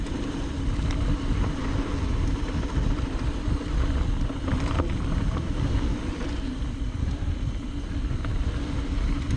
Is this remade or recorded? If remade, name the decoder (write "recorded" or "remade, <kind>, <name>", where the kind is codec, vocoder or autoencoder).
recorded